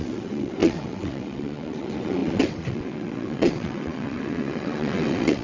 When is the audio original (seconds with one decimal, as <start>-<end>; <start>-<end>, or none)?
none